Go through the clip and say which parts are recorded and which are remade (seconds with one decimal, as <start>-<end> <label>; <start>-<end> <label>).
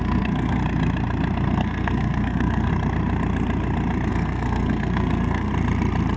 0.0-0.6 remade; 0.6-1.5 recorded; 1.5-2.7 remade; 2.7-4.1 recorded; 4.1-5.5 remade; 5.5-6.2 recorded